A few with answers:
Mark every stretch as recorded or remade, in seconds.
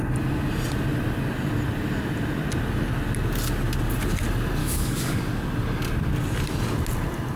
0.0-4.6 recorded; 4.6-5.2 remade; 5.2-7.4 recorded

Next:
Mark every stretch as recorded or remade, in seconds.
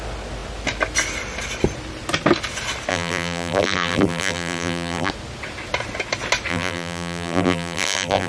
0.0-2.9 recorded; 2.9-5.1 remade; 5.1-6.5 recorded; 6.5-8.3 remade